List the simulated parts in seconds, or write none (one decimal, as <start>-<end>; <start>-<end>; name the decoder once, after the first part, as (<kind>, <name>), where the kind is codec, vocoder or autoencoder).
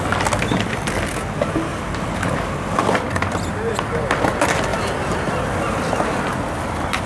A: none